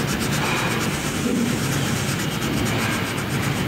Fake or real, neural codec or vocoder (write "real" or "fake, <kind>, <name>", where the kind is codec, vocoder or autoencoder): real